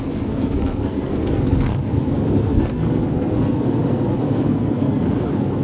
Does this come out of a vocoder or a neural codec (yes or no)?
yes